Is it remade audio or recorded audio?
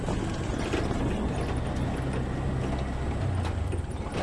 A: recorded